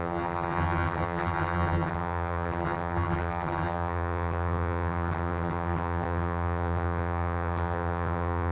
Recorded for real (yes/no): no